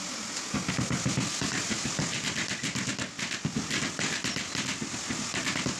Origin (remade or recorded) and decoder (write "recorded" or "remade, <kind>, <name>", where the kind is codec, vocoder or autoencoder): recorded